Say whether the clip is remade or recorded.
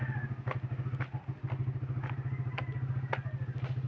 recorded